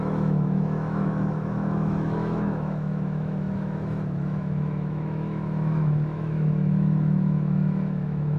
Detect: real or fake fake